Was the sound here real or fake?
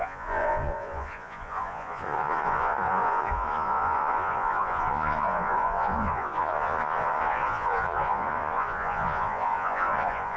fake